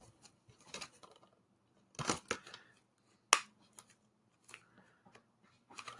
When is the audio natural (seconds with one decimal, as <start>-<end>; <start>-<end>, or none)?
1.2-4.8